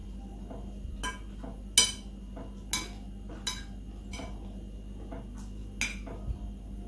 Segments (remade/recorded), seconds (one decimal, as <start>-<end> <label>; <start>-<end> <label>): 0.0-6.9 recorded